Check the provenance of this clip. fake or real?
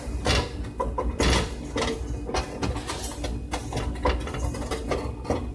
real